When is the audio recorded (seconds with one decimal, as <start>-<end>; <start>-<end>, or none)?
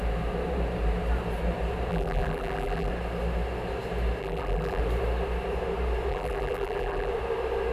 0.0-1.9; 2.9-4.2; 4.8-6.1; 7.1-7.7